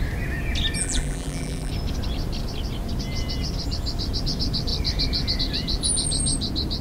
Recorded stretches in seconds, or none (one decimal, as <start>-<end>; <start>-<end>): 0.0-0.8; 1.7-6.8